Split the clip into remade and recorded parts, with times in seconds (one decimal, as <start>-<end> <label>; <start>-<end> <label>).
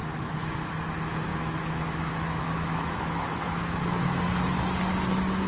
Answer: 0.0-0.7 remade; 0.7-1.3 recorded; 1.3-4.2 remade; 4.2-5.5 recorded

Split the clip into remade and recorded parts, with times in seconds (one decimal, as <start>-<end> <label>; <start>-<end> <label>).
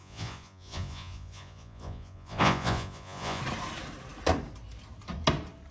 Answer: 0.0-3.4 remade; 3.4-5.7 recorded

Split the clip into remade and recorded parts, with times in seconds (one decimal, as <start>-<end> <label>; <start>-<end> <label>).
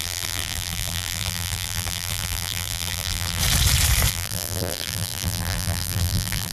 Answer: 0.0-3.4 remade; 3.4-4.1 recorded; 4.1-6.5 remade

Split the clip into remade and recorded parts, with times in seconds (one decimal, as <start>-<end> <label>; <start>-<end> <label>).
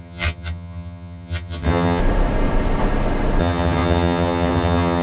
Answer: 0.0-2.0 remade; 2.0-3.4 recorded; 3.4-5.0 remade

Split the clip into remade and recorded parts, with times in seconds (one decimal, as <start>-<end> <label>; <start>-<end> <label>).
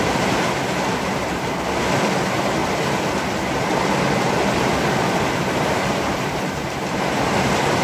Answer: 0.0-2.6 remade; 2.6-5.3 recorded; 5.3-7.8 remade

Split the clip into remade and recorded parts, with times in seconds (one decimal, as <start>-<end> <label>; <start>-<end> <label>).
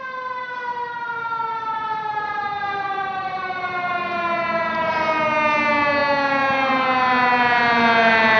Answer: 0.0-0.7 recorded; 0.7-3.9 remade; 3.9-8.4 recorded